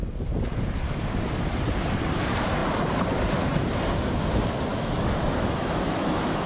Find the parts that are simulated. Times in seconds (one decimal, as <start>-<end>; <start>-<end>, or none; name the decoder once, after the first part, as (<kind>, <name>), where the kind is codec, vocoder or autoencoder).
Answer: 4.7-6.5 (autoencoder, DAC-VAE)